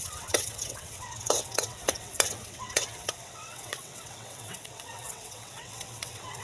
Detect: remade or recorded remade